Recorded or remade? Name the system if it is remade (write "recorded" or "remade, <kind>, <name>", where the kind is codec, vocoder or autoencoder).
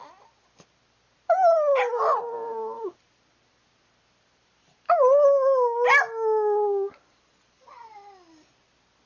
recorded